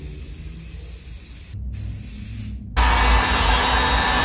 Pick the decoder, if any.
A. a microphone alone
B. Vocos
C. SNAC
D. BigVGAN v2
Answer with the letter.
A